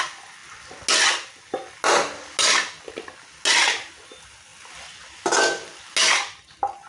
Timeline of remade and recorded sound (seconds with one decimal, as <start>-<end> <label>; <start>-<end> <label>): 0.0-6.9 recorded